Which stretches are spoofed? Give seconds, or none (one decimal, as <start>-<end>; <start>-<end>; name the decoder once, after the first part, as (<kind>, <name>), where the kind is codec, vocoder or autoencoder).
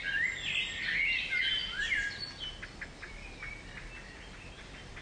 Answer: none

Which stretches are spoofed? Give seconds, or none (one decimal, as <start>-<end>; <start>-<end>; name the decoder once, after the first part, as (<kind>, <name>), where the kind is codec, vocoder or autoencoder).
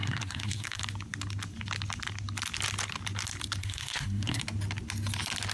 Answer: 0.0-0.8 (codec, SNAC); 3.6-4.4